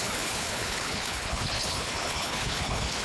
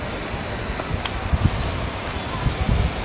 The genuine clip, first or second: second